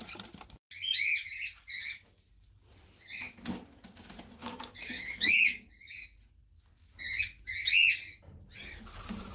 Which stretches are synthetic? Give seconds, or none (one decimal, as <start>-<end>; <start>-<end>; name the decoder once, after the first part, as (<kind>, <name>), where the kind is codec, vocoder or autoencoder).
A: 4.4-5.9 (codec, DAC)